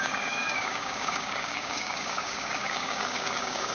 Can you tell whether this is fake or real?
fake